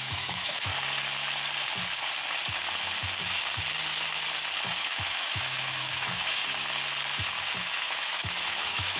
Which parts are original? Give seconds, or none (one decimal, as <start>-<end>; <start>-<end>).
0.7-4.7; 6.4-7.6